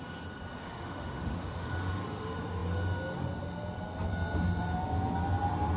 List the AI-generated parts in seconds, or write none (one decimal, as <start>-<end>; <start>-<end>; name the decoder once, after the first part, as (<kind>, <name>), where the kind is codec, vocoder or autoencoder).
0.6-1.9 (autoencoder, DAC-VAE)